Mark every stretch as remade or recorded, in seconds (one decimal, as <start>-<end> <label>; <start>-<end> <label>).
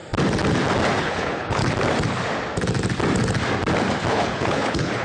0.0-1.0 recorded; 1.0-1.6 remade; 1.6-4.1 recorded; 4.1-5.0 remade